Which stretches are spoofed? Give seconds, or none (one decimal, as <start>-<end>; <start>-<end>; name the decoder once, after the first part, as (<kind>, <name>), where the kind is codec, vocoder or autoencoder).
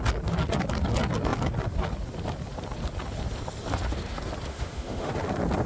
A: 4.5-5.1 (autoencoder, DAC-VAE)